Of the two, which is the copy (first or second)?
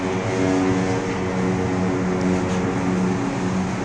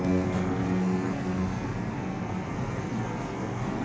second